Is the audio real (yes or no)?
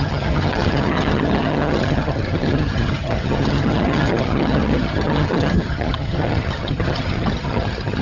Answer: no